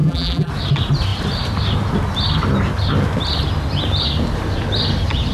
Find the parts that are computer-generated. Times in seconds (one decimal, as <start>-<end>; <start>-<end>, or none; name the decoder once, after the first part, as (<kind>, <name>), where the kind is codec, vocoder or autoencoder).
0.0-0.5 (vocoder, BigVGAN v2)